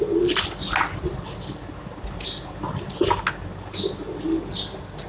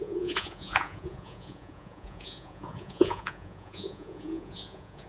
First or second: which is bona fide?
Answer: first